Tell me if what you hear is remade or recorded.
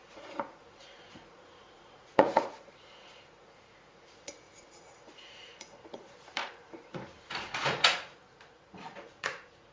remade